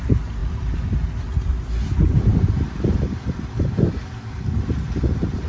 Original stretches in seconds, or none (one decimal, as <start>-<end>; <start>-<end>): none

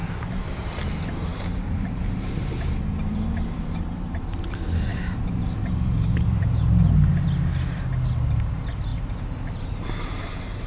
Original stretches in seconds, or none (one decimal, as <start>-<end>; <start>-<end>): 0.0-0.6; 4.4-4.9; 6.6-8.9

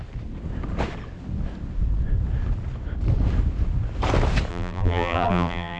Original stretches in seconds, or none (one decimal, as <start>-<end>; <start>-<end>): 0.0-4.5

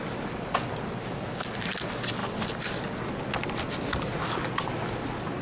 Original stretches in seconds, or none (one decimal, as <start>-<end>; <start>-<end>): 0.0-5.4